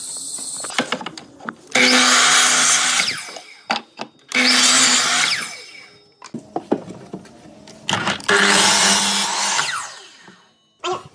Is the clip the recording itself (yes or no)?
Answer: yes